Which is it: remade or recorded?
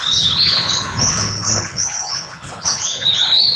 remade